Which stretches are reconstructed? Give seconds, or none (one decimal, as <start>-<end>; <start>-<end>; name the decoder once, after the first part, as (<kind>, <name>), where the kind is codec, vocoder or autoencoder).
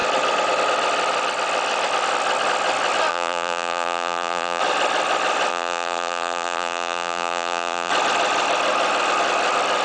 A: 3.1-4.6 (vocoder, BigVGAN v2); 5.5-7.9